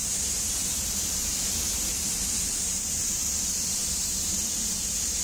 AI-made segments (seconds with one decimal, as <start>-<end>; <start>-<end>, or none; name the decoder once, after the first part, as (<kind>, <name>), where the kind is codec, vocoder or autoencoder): 0.0-5.2 (vocoder, BigVGAN v2)

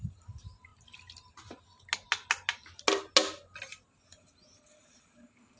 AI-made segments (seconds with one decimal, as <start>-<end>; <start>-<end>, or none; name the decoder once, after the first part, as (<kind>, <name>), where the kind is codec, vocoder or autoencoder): 0.0-0.7 (vocoder, BigVGAN v2); 4.1-5.6

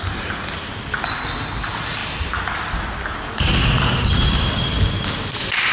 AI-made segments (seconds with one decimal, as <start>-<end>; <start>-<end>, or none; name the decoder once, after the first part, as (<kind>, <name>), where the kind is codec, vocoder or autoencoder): none

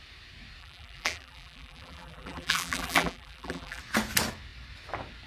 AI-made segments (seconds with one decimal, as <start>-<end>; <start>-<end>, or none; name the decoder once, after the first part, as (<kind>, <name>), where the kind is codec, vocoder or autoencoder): 0.6-3.8 (vocoder, BigVGAN v2)

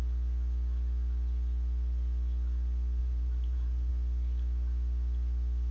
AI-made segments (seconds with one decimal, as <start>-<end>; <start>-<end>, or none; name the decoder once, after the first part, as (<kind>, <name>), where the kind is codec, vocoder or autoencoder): 3.0-3.9 (vocoder, BigVGAN v2)

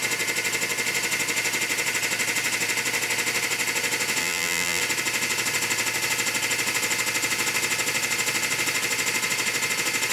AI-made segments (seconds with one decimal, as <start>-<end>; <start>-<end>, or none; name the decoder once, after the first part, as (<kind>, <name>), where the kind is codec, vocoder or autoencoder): 4.2-4.8 (vocoder, BigVGAN v2)

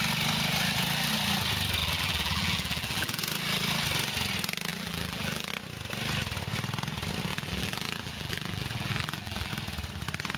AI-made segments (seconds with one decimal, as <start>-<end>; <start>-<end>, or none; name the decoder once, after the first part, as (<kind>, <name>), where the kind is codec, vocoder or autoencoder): 1.8-3.2 (vocoder, BigVGAN v2); 4.7-5.5; 7.3-9.5